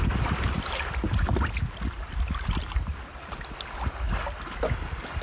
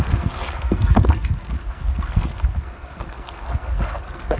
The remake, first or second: second